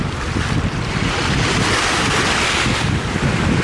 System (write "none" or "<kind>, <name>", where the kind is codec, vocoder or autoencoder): none